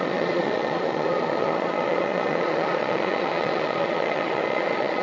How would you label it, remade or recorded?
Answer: remade